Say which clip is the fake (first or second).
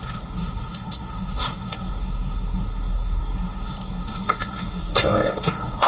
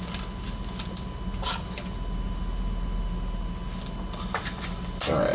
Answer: first